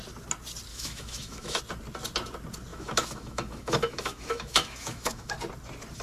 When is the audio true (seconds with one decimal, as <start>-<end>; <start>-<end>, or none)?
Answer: 0.0-0.7; 1.6-2.7; 5.3-6.0

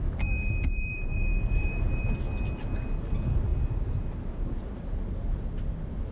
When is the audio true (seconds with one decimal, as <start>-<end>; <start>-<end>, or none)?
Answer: 0.0-0.9; 2.0-6.1

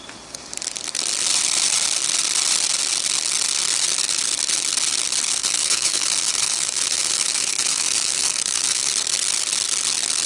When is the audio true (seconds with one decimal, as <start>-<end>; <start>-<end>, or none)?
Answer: 0.0-5.4; 8.9-10.3

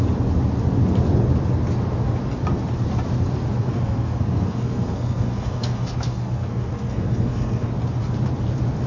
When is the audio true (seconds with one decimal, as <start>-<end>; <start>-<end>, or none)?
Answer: 0.0-3.6; 7.7-8.9

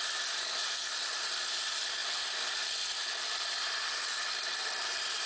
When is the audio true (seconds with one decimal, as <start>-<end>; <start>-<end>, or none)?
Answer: 0.0-5.3

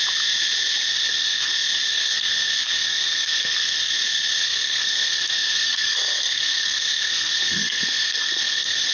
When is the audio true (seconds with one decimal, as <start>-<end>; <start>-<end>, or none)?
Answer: 0.0-0.9; 1.5-1.9; 3.9-4.4